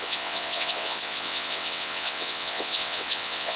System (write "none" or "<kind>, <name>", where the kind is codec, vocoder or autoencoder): vocoder, WaveNeXt